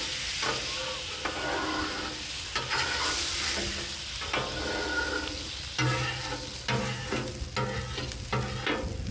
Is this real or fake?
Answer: real